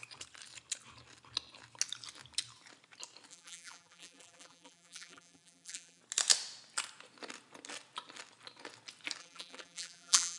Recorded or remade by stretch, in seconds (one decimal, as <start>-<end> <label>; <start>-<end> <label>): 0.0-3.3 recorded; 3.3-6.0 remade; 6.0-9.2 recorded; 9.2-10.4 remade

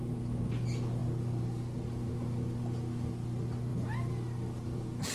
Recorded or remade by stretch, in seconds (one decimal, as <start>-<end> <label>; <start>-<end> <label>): 0.0-5.1 recorded

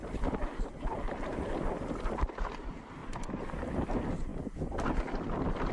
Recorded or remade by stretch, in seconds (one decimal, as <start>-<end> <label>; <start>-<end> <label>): 0.0-2.2 recorded; 2.2-3.0 remade; 3.0-3.7 recorded; 3.7-4.3 remade; 4.3-5.7 recorded

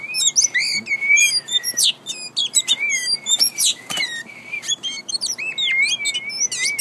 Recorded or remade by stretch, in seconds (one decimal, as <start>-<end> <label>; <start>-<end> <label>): 0.0-1.0 recorded; 1.0-1.9 remade; 1.9-2.4 recorded; 2.4-5.5 remade; 5.5-6.8 recorded

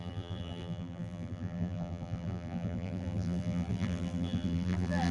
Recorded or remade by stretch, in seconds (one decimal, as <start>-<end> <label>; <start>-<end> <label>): 0.0-5.1 remade